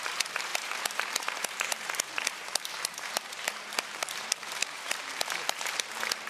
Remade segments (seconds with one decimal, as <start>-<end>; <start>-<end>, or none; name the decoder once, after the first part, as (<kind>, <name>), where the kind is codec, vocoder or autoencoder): 0.0-6.3 (vocoder, BigVGAN v2)

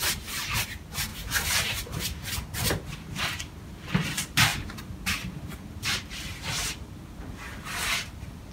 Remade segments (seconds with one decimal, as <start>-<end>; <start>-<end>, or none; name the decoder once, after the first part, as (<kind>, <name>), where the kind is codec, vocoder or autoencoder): 1.1-2.0 (vocoder, BigVGAN v2)

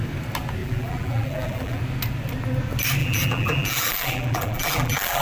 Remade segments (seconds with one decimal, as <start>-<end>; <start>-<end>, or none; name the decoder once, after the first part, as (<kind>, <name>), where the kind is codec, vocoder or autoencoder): 0.6-1.8 (vocoder, BigVGAN v2); 3.0-5.2

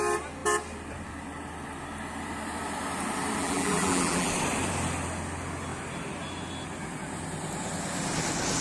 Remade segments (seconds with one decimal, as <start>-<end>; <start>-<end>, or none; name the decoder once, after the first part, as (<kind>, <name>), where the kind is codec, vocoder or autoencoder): 3.4-4.3 (vocoder, BigVGAN v2)

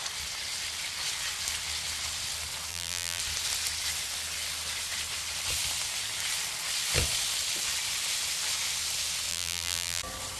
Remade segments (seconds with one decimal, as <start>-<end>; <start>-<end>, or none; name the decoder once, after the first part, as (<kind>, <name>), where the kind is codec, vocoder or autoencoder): 2.7-3.2 (vocoder, BigVGAN v2); 9.3-10.0

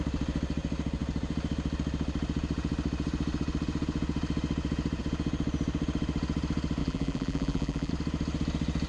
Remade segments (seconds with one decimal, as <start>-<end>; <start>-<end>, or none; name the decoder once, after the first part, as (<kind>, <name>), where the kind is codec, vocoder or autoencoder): 6.8-7.9 (vocoder, BigVGAN v2)